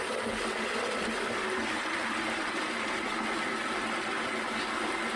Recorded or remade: recorded